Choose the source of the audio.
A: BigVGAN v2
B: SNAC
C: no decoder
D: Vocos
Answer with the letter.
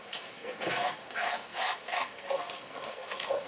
B